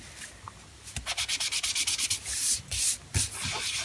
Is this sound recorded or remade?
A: recorded